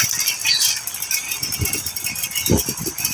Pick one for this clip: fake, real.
real